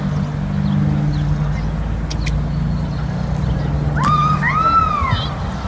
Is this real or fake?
real